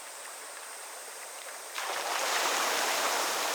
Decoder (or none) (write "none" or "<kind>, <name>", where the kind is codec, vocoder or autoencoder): vocoder, BigVGAN v2